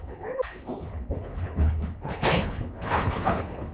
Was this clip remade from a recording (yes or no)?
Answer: yes